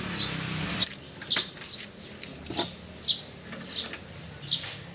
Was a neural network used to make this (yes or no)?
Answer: no